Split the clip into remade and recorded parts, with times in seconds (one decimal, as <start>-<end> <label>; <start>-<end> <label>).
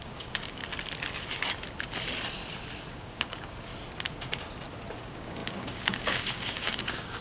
0.0-0.6 remade; 0.6-2.9 recorded; 2.9-3.7 remade; 3.7-5.0 recorded; 5.0-7.2 remade